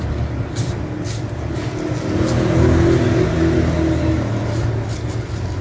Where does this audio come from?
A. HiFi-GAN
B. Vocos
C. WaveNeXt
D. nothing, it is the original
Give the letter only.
D